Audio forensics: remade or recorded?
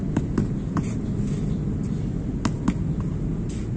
recorded